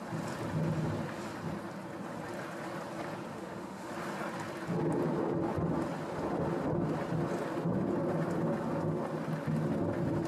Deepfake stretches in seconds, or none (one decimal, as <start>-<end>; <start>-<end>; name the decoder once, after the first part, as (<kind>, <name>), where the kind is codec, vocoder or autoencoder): 3.3-3.9 (autoencoder, DAC-VAE)